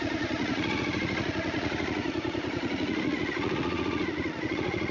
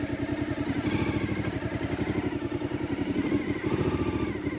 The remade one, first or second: first